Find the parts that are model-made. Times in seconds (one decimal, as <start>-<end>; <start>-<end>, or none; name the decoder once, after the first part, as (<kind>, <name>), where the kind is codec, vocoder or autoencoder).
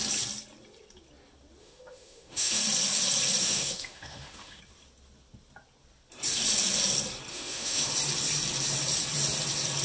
1.6-2.6 (autoencoder, DAC-VAE); 3.4-4.6; 7.3-7.9